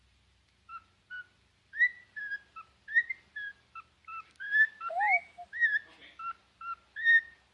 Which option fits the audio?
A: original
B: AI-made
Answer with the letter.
A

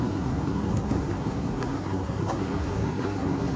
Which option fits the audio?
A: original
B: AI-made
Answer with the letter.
B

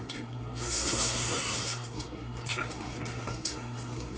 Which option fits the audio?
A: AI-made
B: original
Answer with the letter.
A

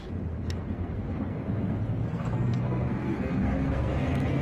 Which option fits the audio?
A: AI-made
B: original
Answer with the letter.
A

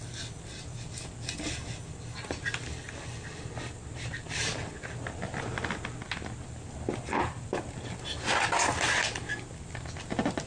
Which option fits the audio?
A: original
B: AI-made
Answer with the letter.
A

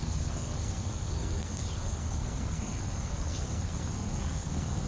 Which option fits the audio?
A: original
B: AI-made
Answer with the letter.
B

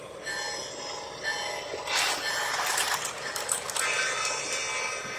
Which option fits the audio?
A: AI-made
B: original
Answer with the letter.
B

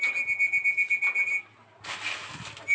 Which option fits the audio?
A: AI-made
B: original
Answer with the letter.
B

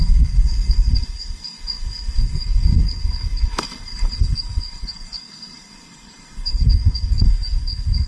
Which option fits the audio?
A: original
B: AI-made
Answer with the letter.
B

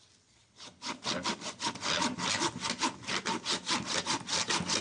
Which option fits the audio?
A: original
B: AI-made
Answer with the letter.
A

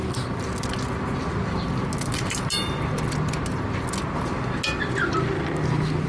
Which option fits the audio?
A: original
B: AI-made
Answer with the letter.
A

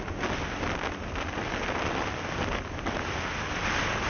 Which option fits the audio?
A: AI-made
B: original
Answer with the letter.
B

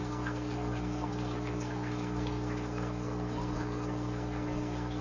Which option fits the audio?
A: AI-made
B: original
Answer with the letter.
A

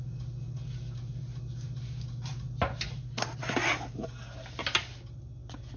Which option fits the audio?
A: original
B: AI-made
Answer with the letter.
A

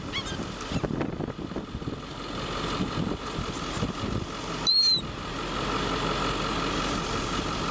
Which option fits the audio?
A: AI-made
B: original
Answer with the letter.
B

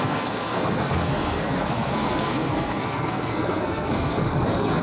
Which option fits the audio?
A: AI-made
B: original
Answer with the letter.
A